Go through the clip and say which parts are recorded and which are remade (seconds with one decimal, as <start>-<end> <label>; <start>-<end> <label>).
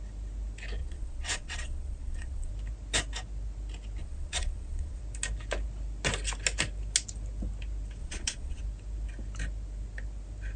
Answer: 0.0-0.8 recorded; 0.8-2.5 remade; 2.5-4.0 recorded; 4.0-5.0 remade; 5.0-8.0 recorded; 8.0-8.6 remade; 8.6-10.6 recorded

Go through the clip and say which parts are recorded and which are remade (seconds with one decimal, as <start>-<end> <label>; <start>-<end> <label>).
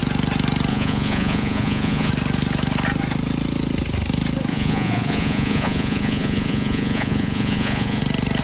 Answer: 0.0-0.7 recorded; 0.7-2.1 remade; 2.1-4.5 recorded; 4.5-8.0 remade; 8.0-8.4 recorded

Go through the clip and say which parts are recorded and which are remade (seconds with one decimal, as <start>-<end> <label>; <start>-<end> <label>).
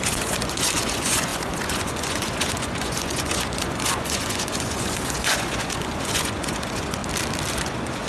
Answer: 0.0-7.0 remade; 7.0-7.5 recorded; 7.5-8.1 remade